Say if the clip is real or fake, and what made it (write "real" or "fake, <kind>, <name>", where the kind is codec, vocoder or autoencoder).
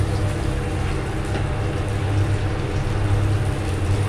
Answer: real